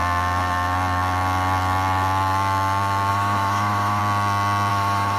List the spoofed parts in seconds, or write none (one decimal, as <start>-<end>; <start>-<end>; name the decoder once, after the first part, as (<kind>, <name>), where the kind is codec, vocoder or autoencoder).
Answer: 3.1-4.0 (autoencoder, DAC-VAE); 4.7-5.2